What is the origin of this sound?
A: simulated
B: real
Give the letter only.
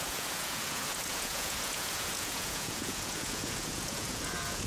A